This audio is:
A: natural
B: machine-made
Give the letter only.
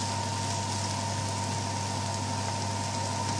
A